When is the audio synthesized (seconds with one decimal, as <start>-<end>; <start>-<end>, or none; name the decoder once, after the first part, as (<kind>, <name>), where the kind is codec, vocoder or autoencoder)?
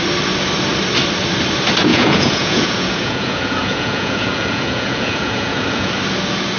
1.9-5.9 (vocoder, Vocos)